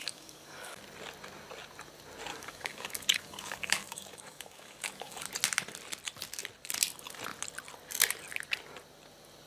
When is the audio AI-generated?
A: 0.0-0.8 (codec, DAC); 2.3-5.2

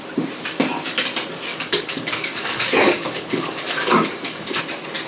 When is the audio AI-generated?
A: 1.5-4.6 (codec, DAC)

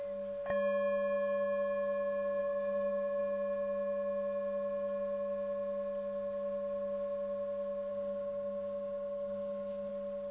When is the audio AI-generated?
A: 2.4-3.2 (codec, DAC); 7.9-9.9